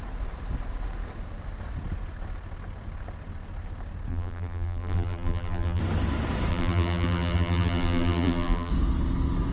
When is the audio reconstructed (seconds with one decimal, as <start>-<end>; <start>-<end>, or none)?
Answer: 4.1-5.8; 6.5-8.7